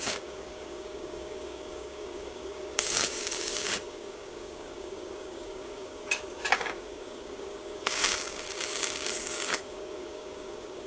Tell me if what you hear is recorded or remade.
remade